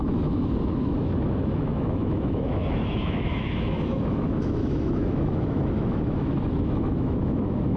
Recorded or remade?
remade